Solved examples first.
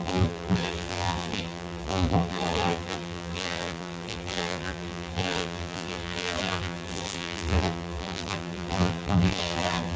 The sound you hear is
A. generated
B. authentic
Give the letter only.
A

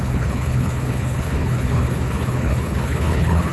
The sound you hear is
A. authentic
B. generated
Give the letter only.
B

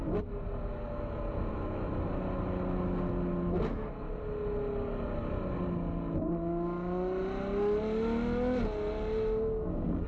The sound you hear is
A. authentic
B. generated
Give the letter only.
A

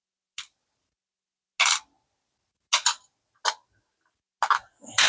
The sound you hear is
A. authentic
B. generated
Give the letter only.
A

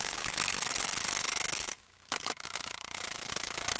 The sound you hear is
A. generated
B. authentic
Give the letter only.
A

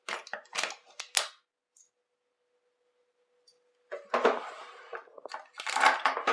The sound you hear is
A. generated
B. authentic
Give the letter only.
B